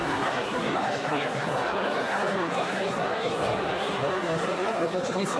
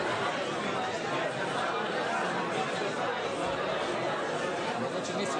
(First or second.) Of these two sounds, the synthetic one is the first